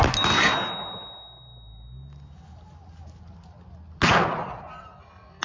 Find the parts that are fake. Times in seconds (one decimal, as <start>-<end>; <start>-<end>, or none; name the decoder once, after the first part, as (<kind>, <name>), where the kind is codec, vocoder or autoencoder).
none